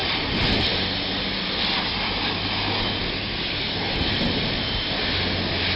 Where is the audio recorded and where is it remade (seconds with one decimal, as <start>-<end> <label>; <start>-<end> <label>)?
0.0-5.8 recorded